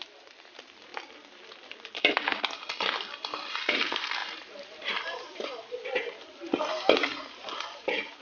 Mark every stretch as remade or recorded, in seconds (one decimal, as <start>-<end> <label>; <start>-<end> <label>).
0.0-0.9 remade; 0.9-1.5 recorded; 1.5-2.3 remade; 2.3-3.7 recorded; 3.7-8.2 remade